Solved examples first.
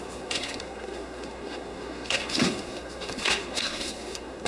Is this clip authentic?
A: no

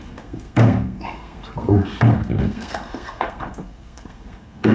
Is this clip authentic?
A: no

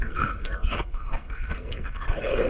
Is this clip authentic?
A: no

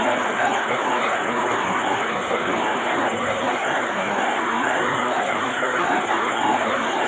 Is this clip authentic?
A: no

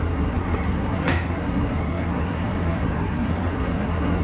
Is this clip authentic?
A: no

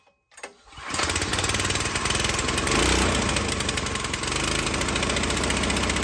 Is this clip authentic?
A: yes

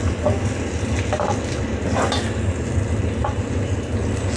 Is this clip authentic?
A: yes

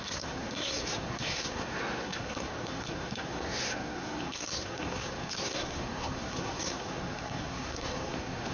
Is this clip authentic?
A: no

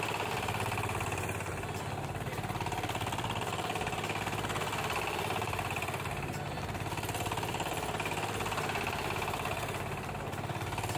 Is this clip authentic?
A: yes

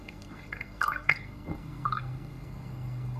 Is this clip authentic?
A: no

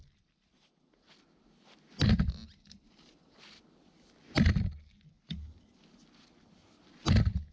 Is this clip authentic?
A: yes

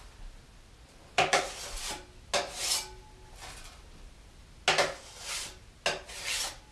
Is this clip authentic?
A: yes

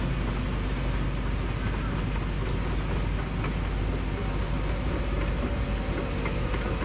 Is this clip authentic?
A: yes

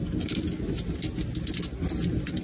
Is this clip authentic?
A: yes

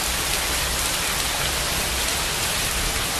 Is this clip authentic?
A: yes